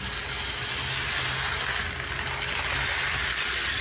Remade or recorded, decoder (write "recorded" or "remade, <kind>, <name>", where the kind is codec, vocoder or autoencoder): recorded